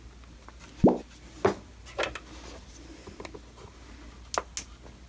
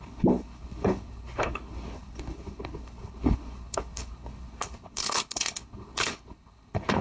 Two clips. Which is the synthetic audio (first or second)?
second